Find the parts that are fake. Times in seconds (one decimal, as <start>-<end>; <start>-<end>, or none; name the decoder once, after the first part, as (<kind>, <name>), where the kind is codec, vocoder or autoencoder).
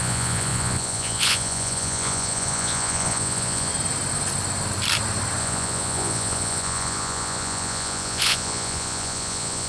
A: 0.0-3.7 (vocoder, Vocos); 5.4-9.7